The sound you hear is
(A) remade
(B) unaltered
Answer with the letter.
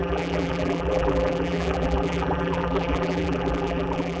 A